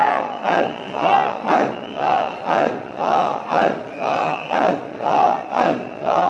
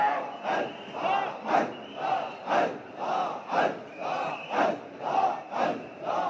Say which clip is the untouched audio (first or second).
second